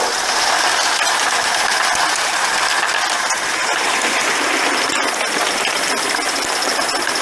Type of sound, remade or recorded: recorded